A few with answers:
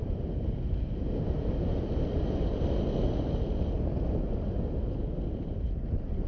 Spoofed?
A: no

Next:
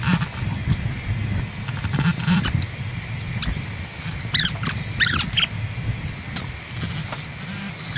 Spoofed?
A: no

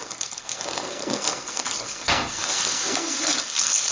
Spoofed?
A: yes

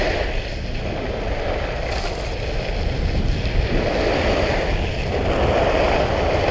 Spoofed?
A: no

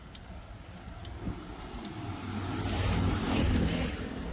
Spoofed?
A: no